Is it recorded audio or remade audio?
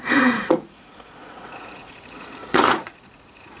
remade